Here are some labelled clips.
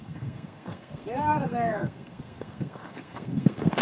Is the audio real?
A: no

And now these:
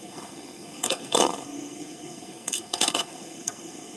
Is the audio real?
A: no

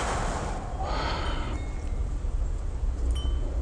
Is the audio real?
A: yes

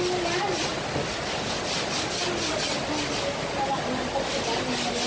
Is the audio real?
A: yes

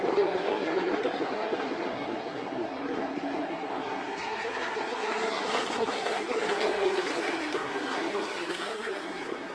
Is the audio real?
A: no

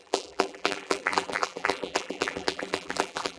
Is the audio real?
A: no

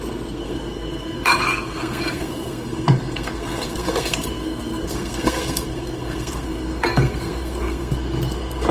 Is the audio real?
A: no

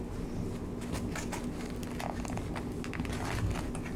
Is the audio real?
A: yes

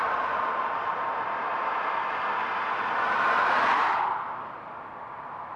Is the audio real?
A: yes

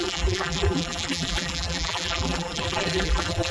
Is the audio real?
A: no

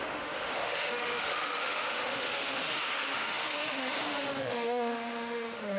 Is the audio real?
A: no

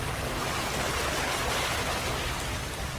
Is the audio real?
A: yes